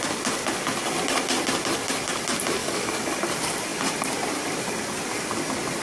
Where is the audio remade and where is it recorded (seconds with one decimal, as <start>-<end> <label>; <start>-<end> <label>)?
0.0-2.6 recorded; 2.6-3.1 remade; 3.1-5.8 recorded